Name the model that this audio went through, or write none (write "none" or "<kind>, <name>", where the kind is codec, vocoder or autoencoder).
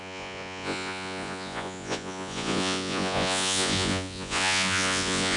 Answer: vocoder, Vocos